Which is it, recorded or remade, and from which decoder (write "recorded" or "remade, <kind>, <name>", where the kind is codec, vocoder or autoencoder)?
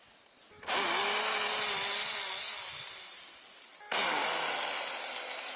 recorded